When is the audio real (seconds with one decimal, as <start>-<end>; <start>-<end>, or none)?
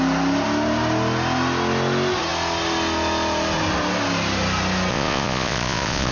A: 0.0-4.9